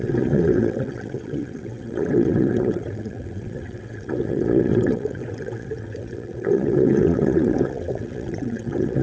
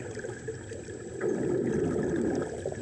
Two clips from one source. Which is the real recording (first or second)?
second